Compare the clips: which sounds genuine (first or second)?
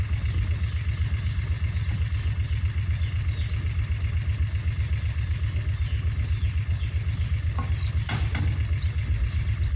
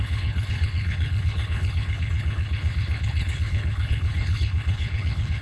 first